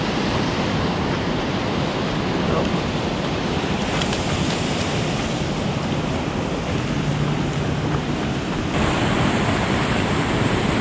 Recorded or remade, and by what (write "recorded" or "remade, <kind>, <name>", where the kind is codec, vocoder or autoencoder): remade, vocoder, BigVGAN v2